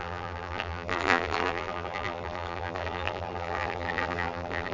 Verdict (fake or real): fake